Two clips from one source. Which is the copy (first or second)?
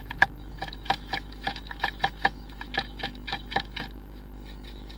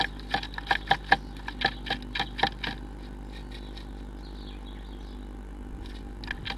first